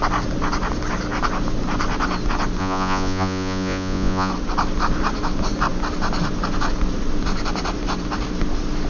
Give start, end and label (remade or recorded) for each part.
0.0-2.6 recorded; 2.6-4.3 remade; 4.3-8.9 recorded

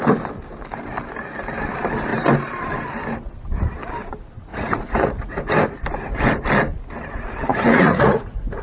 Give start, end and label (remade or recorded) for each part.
0.0-4.5 recorded; 4.5-5.4 remade; 5.4-7.5 recorded; 7.5-8.6 remade

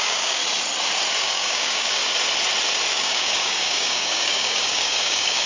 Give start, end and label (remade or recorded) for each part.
0.0-0.4 remade; 0.4-1.2 recorded; 1.2-2.0 remade; 2.0-2.9 recorded; 2.9-5.5 remade

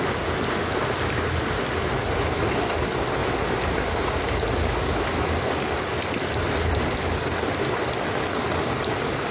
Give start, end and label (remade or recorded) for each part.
0.0-9.3 recorded

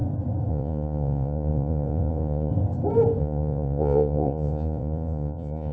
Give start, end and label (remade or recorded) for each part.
0.0-0.5 recorded; 0.5-2.5 remade; 2.5-3.2 recorded; 3.2-5.7 remade

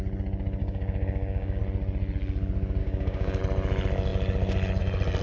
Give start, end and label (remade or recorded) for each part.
0.0-0.6 recorded; 0.6-1.6 remade; 1.6-2.8 recorded; 2.8-3.4 remade; 3.4-5.2 recorded

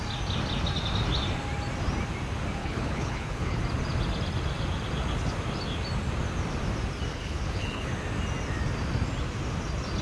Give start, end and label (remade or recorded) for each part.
0.0-2.6 recorded; 2.6-3.6 remade; 3.6-7.1 recorded; 7.1-7.9 remade; 7.9-10.0 recorded